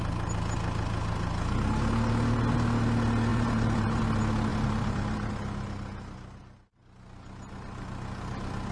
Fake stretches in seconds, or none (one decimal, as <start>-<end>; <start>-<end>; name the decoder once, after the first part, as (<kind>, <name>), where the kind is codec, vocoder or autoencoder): 3.3-4.0 (vocoder, BigVGAN v2); 4.5-5.3

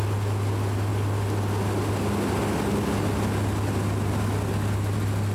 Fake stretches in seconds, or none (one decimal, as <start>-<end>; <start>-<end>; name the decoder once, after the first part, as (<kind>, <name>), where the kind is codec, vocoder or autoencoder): none

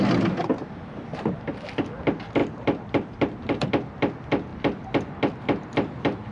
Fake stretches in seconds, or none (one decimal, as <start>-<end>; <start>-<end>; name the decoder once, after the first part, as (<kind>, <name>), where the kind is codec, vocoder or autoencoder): 2.4-3.7 (vocoder, BigVGAN v2)